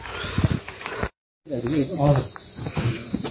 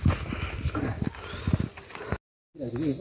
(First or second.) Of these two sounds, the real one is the second